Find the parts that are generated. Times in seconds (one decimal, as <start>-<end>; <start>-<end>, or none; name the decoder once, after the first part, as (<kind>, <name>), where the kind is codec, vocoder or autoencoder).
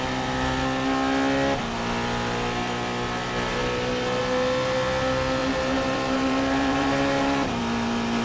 5.4-7.6 (vocoder, BigVGAN v2)